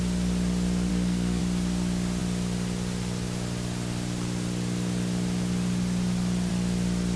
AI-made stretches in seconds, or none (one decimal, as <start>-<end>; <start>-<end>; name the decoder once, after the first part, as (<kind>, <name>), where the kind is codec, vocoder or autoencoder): 0.9-1.4 (codec, SNAC)